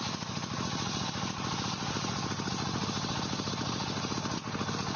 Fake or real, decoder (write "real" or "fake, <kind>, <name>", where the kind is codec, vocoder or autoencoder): real